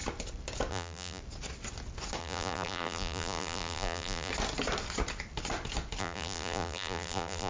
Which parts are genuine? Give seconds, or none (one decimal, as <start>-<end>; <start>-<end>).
0.0-0.7; 1.2-2.2; 4.3-6.0